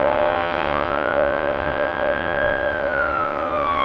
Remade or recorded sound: remade